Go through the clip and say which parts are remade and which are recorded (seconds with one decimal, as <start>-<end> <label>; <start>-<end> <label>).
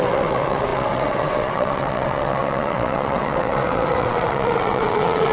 0.0-5.3 remade